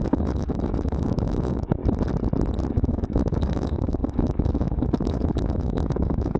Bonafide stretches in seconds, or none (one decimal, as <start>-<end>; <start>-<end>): 1.8-2.7